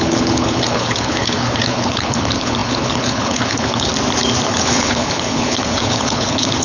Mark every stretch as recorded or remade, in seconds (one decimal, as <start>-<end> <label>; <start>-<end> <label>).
0.0-3.9 remade; 3.9-4.5 recorded; 4.5-6.6 remade